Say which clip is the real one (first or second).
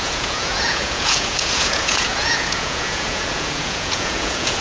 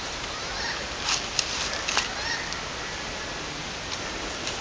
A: second